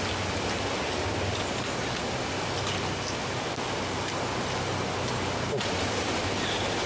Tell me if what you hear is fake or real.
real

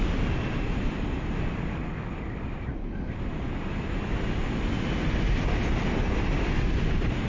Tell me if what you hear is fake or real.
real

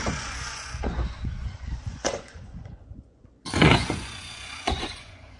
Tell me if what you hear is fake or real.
fake